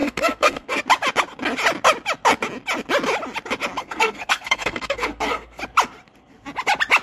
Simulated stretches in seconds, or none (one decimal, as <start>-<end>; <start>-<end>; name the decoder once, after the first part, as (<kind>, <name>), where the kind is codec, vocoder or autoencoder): 0.0-0.8 (codec, SNAC); 3.8-5.6